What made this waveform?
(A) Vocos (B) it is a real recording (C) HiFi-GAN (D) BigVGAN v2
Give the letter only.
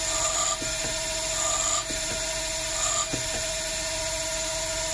B